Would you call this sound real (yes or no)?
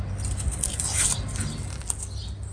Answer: yes